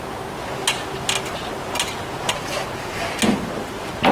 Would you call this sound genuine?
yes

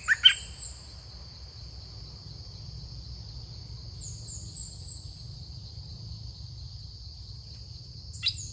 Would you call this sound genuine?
yes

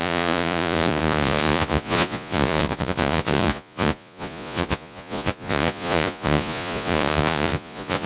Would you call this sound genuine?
no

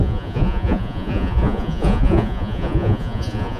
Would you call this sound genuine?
no